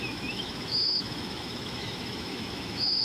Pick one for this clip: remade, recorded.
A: remade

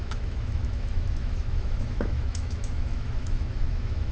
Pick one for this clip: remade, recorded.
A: remade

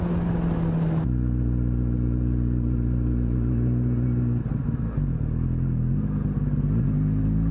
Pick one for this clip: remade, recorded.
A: recorded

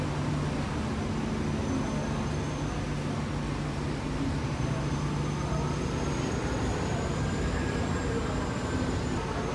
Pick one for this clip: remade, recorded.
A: recorded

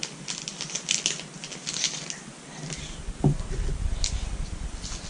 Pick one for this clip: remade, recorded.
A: recorded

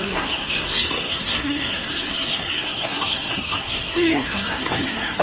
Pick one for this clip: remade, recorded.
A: remade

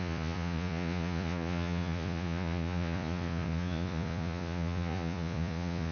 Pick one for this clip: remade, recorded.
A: remade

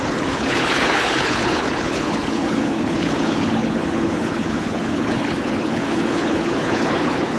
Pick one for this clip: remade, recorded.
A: remade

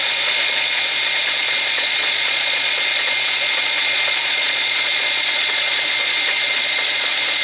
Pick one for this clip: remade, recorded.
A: remade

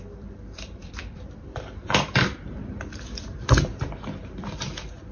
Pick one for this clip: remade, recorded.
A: remade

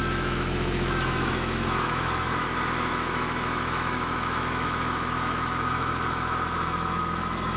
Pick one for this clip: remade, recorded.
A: remade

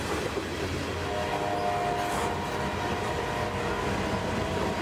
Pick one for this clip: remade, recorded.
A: recorded